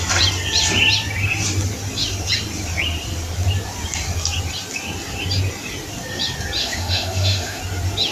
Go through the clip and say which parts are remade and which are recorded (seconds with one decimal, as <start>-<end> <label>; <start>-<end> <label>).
0.0-6.6 recorded; 6.6-7.6 remade; 7.6-8.1 recorded